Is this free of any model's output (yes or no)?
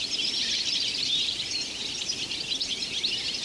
no